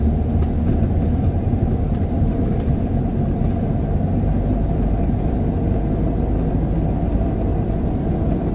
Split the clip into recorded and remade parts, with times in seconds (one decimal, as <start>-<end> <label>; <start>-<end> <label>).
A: 0.0-1.2 recorded; 1.2-5.6 remade; 5.6-7.5 recorded; 7.5-8.0 remade; 8.0-8.5 recorded